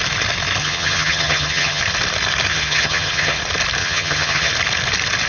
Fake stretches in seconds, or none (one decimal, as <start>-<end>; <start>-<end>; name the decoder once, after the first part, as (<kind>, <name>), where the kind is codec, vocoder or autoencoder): 0.6-1.8 (vocoder, HiFi-GAN); 2.5-3.4; 3.8-4.5